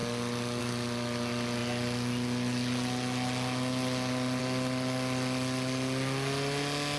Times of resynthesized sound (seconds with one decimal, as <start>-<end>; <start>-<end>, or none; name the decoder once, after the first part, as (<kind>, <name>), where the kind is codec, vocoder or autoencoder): none